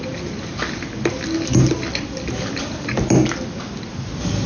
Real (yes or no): yes